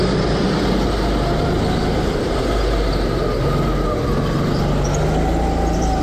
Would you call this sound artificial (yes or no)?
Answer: no